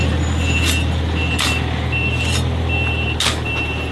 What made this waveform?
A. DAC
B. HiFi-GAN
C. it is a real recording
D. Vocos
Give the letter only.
C